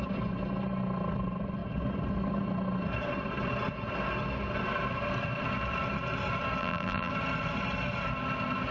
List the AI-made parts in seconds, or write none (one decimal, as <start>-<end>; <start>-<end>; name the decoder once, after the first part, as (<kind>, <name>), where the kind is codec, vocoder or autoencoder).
6.6-7.1 (vocoder, BigVGAN v2)